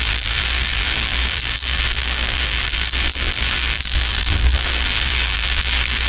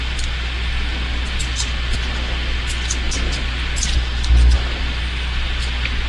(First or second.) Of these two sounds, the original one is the second